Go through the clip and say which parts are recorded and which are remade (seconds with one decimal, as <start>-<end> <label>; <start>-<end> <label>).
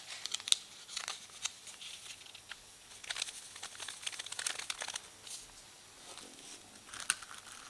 0.0-7.7 recorded